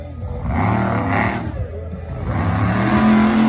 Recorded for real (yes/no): yes